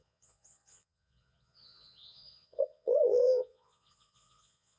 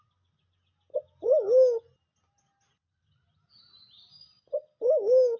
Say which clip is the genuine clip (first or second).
second